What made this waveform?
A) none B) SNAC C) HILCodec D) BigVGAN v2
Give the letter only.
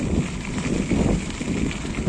A